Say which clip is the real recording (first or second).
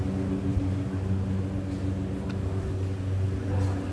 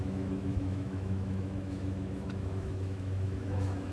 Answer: first